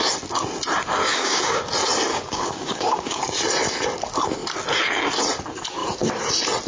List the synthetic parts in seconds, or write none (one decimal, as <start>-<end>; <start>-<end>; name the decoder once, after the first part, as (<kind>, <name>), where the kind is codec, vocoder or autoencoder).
1.0-1.6 (codec, DAC); 2.1-3.2